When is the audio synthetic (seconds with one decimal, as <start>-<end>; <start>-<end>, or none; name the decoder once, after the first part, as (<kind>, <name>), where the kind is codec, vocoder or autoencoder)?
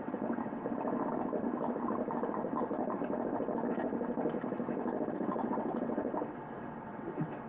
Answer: 0.0-0.6 (vocoder, WaveNeXt); 5.1-7.5